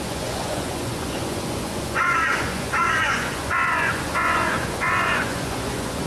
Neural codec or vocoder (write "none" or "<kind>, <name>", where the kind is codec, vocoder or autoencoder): vocoder, Vocos